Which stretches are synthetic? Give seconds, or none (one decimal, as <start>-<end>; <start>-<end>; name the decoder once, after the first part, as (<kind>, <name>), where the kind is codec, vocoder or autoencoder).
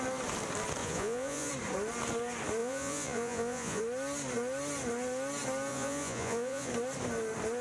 0.8-1.5 (vocoder, Vocos); 2.6-3.8; 5.7-6.7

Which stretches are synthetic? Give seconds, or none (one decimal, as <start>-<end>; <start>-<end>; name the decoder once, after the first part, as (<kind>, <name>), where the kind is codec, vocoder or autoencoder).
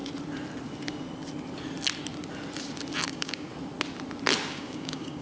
3.1-3.5 (codec, DAC); 4.5-5.2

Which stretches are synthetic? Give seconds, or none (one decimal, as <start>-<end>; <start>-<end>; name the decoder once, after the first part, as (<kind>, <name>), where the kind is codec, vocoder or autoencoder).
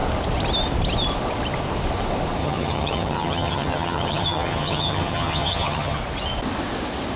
2.4-6.0 (vocoder, HiFi-GAN)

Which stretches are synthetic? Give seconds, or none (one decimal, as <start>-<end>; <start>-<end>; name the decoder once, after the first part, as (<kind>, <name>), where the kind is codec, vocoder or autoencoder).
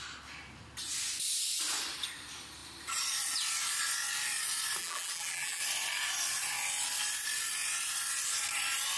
4.8-5.6 (vocoder, BigVGAN v2)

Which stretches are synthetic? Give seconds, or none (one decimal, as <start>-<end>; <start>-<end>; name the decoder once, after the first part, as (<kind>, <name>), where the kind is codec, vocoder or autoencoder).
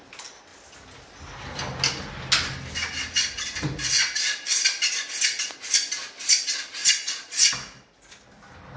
6.8-7.5 (vocoder, Vocos)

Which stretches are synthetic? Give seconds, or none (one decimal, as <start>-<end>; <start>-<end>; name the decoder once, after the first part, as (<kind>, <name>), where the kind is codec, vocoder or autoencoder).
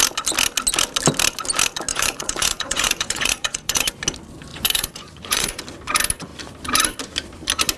1.9-3.9 (vocoder, Vocos); 4.5-5.6